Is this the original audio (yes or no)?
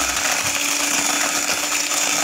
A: yes